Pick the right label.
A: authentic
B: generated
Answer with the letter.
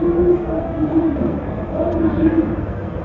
B